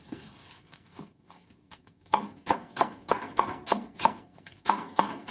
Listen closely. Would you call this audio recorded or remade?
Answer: remade